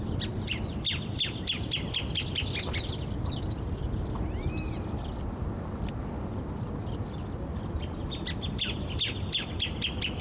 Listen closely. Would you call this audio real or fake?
real